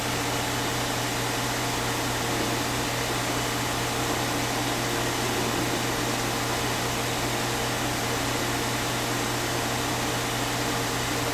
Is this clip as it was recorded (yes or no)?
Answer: yes